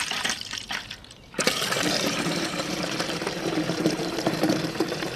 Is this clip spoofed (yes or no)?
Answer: yes